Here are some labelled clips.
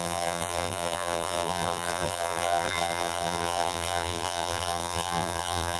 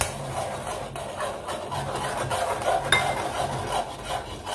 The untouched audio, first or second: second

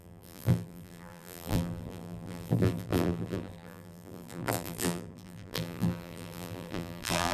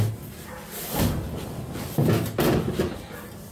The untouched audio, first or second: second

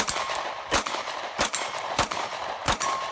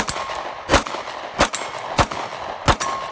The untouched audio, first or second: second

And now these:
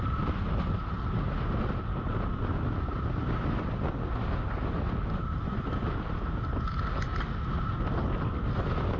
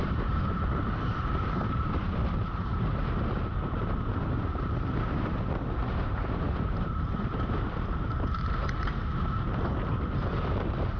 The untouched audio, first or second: first